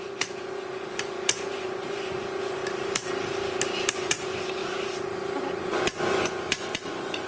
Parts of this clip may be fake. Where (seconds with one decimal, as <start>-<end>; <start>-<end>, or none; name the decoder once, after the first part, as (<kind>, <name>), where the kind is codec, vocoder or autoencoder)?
0.0-2.6 (vocoder, Vocos); 3.9-4.6; 5.6-7.3